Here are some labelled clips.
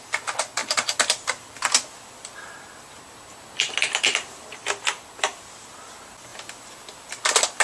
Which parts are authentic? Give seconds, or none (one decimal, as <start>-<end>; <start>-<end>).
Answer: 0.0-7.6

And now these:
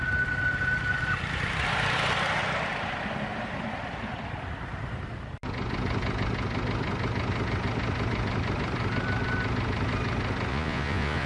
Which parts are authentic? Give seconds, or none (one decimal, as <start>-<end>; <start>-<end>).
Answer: 0.0-10.5

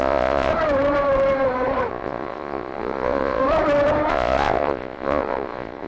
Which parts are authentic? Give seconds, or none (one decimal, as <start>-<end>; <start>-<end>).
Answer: 0.5-1.9; 3.4-4.1